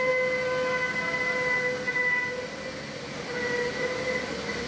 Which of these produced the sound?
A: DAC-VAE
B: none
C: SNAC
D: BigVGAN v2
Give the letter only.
B